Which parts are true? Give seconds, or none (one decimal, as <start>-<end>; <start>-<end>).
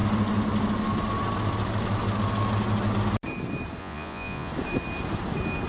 0.0-3.8; 4.5-5.7